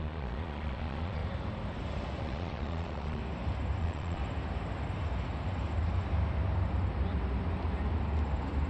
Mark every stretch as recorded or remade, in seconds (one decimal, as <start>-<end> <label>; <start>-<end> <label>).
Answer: 0.0-1.2 remade; 1.2-2.2 recorded; 2.2-3.2 remade; 3.2-3.8 recorded; 3.8-4.2 remade; 4.2-8.7 recorded